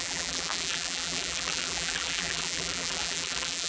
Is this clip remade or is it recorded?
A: remade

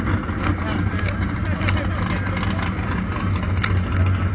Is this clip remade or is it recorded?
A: recorded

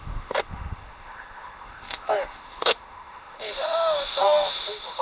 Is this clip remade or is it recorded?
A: remade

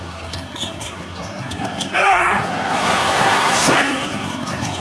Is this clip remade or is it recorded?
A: remade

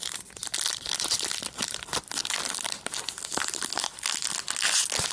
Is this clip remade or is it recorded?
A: recorded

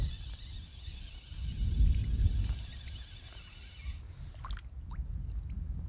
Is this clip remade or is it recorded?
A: recorded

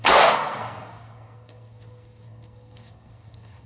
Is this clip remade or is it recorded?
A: remade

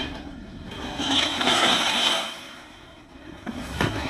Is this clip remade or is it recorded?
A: remade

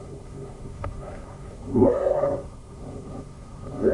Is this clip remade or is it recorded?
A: remade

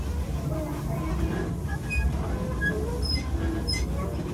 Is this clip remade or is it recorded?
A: recorded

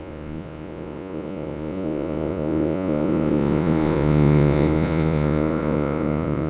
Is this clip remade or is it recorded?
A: remade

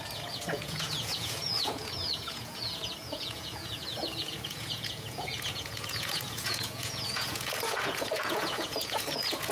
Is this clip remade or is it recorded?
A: remade